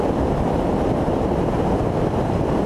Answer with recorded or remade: remade